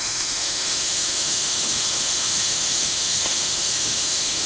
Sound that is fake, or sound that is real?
fake